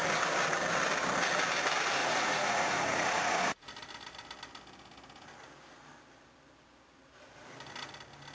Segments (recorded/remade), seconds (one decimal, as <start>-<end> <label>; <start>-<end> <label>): 0.0-2.0 recorded; 2.0-3.7 remade; 3.7-8.3 recorded